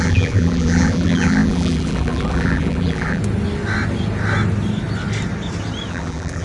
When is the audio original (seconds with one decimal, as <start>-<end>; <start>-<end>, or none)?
3.2-5.9

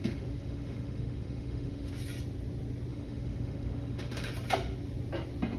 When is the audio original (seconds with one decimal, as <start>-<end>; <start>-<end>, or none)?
1.9-2.9; 4.3-5.6

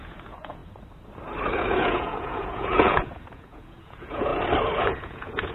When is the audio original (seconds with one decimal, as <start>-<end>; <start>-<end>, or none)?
0.6-1.8; 4.3-4.8